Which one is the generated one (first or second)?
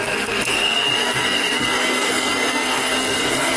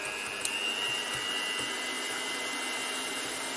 first